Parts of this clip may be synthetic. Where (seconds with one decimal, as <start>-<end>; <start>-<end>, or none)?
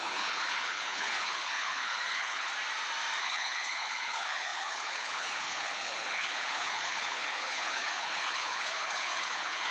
0.0-2.5; 3.2-9.7